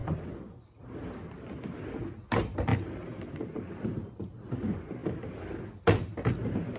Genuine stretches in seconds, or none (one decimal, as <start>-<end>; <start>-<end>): 0.0-6.8